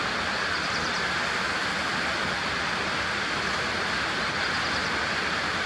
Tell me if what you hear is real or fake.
real